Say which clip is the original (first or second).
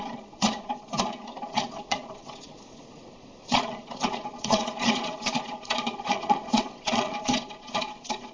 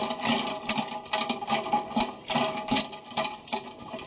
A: second